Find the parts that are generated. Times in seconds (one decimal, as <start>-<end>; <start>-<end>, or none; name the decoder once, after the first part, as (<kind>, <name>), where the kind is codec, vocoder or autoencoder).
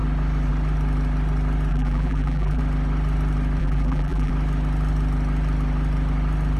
1.7-2.6 (vocoder, BigVGAN v2); 3.6-4.3